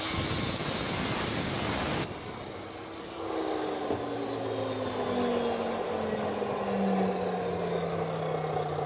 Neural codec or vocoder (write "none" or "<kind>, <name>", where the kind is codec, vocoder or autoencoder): none